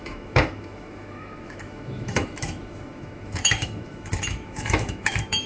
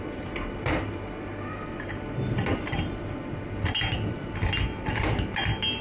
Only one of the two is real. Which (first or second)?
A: second